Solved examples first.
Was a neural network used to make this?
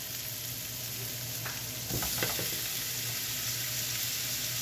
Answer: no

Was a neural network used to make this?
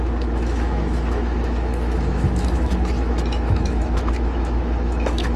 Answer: yes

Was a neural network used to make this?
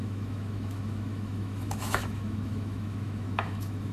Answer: yes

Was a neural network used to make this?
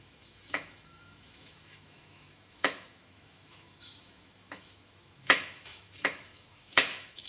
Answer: yes